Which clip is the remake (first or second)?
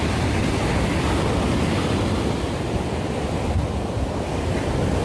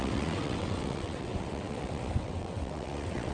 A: second